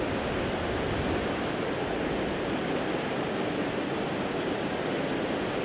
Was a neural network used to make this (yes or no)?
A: no